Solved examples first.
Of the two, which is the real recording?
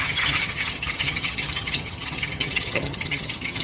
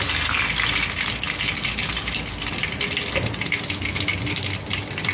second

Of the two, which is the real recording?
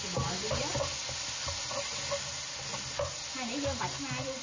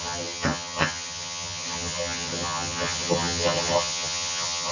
first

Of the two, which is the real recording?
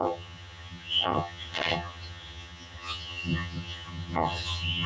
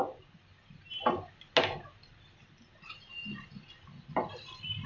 second